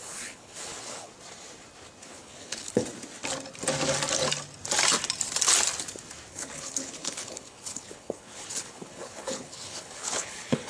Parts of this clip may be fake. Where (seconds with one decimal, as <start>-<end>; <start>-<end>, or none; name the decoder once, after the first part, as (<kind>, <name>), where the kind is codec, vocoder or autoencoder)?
0.0-1.1 (codec, HILCodec); 2.0-2.8; 6.3-10.7